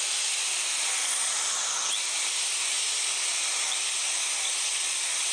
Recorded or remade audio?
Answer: recorded